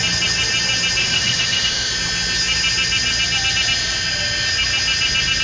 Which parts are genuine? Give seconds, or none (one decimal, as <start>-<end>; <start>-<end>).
0.0-1.0; 1.9-5.4